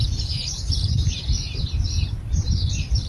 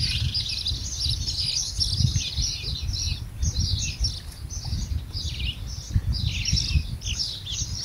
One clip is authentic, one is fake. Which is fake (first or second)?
first